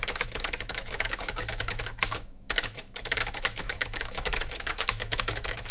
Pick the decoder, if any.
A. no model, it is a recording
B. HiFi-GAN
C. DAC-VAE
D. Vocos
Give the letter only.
C